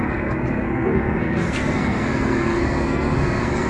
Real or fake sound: fake